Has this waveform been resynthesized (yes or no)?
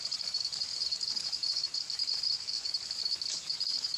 yes